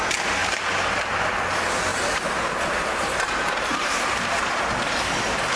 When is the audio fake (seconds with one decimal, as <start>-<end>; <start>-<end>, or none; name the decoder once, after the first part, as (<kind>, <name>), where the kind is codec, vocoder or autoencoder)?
0.4-1.2 (vocoder, BigVGAN v2); 1.9-4.6